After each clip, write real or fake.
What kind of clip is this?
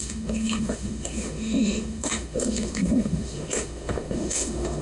fake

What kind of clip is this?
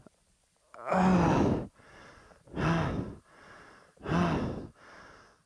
real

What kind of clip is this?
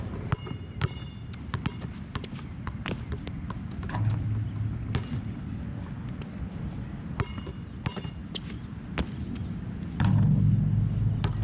real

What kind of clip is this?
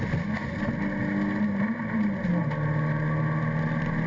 real